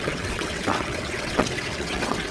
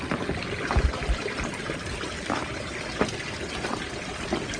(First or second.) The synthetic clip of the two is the first